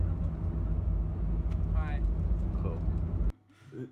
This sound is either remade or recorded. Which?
recorded